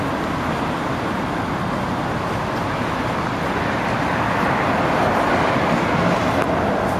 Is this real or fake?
real